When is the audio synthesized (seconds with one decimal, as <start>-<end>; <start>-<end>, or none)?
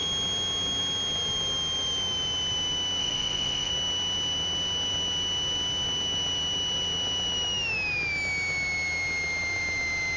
3.0-3.7